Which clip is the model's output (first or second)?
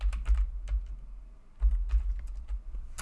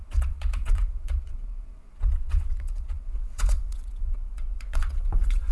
second